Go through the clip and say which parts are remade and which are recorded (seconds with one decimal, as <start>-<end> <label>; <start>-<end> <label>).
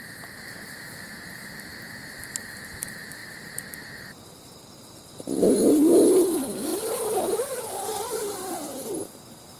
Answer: 0.0-9.6 recorded